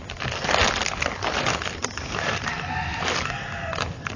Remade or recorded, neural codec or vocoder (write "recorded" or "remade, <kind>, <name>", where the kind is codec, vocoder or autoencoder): recorded